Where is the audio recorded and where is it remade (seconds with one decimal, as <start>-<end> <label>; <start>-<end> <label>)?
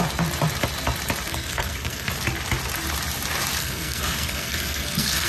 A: 0.0-1.3 recorded; 1.3-2.1 remade; 2.1-3.6 recorded; 3.6-5.3 remade